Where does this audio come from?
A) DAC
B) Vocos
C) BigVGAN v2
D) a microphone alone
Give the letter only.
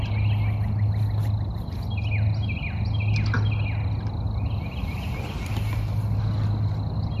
D